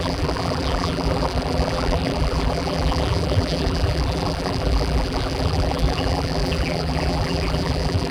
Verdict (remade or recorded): remade